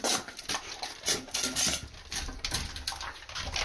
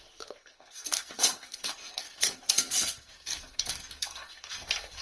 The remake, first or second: second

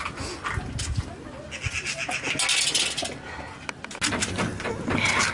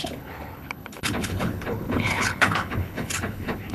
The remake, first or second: second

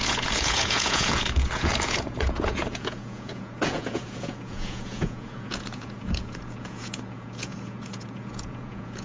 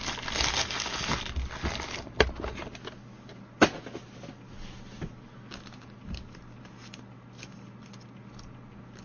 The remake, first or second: first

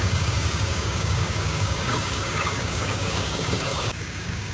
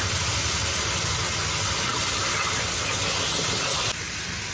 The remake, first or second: first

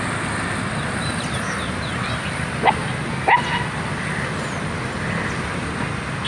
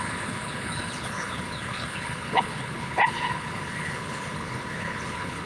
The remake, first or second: second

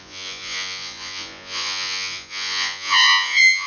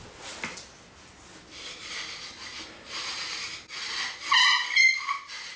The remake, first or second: first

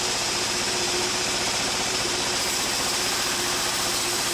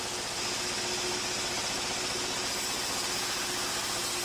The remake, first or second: first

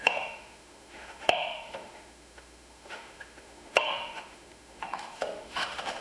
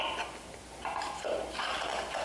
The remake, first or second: first